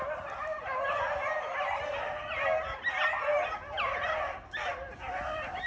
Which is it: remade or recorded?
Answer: recorded